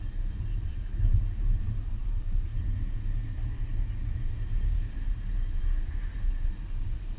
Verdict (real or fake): fake